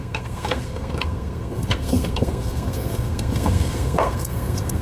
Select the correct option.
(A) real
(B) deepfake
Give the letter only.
B